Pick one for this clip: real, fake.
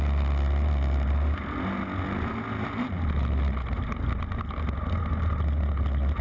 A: real